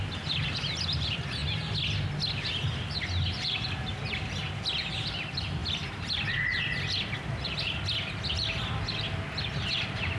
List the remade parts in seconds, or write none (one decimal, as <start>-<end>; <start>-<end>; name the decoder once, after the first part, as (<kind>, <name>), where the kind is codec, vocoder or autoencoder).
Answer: 0.0-1.4 (vocoder, BigVGAN v2); 2.3-10.2